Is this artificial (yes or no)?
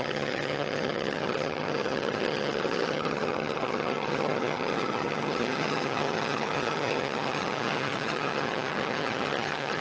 yes